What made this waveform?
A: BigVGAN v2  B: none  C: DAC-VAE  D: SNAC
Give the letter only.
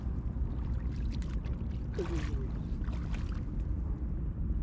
B